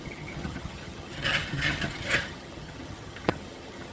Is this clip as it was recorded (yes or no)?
no